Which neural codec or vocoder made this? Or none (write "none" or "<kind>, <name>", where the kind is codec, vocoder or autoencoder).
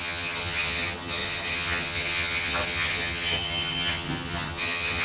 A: vocoder, HiFi-GAN